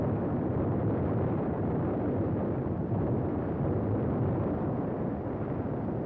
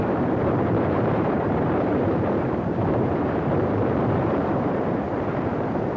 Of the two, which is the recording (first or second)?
first